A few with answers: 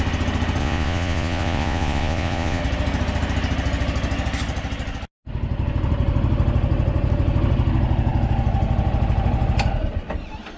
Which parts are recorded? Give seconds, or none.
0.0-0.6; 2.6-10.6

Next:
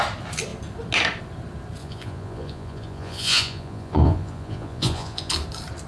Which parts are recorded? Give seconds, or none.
0.0-1.8; 5.3-5.9